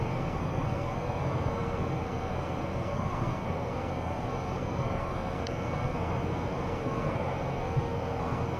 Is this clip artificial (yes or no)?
yes